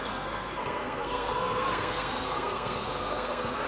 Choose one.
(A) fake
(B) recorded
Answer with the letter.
A